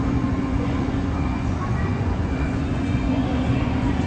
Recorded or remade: remade